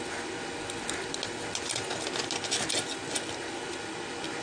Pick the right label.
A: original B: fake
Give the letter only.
A